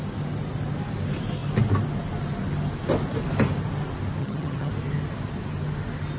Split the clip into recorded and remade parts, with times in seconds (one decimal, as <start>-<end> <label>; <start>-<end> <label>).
0.0-4.2 recorded; 4.2-4.7 remade; 4.7-6.2 recorded